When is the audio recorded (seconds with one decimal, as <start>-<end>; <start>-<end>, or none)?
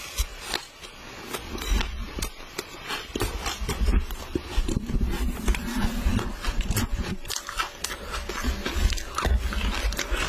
0.0-10.3